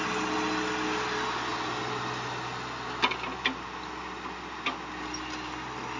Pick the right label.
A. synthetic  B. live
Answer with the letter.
B